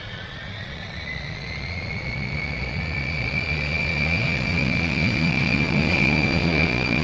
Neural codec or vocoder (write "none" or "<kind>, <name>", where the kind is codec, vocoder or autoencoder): vocoder, Vocos